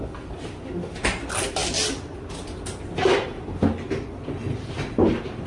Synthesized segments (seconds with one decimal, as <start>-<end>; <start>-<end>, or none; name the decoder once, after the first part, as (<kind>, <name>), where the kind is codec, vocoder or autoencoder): none